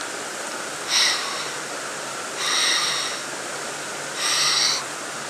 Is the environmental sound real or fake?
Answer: real